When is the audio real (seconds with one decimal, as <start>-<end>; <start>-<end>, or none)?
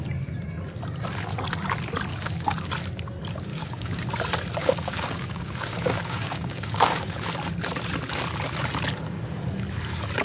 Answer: 0.0-2.1; 2.7-3.5; 4.1-4.6; 7.3-10.2